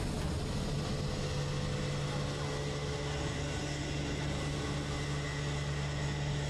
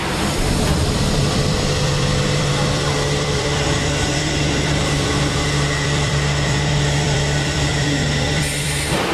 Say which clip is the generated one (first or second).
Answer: second